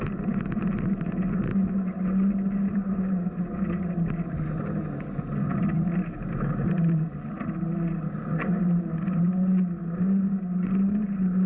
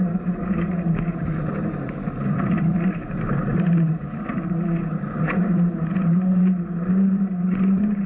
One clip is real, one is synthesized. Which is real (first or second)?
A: first